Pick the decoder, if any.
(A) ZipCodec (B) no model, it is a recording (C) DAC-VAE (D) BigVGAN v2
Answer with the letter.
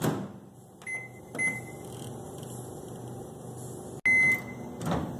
B